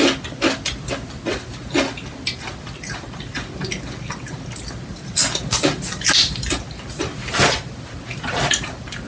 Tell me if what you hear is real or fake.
real